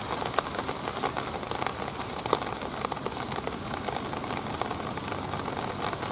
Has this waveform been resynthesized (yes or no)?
no